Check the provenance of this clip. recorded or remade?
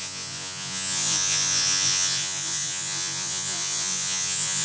remade